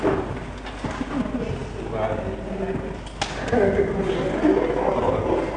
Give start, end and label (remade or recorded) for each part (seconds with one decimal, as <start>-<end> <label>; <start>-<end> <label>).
0.0-5.6 recorded